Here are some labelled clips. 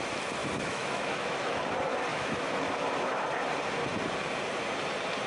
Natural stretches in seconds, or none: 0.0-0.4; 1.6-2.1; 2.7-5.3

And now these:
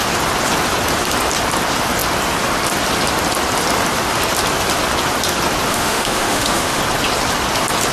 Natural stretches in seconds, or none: 0.0-5.7; 6.8-7.9

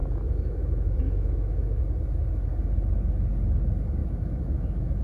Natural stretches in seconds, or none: 1.8-4.0

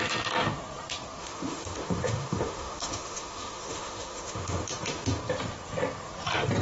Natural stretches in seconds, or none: 0.0-1.2; 5.2-6.6

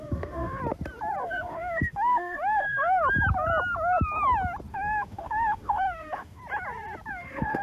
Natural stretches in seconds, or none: 0.6-1.2; 3.0-4.7; 6.4-7.1

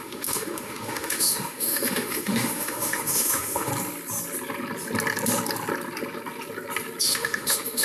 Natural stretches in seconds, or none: 3.7-7.0

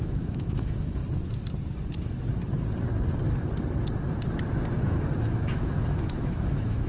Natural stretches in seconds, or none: 1.0-5.0